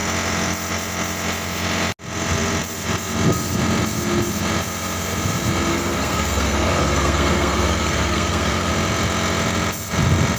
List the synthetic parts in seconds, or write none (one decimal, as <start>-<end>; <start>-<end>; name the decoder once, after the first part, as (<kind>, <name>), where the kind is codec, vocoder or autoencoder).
5.7-8.7 (codec, SNAC)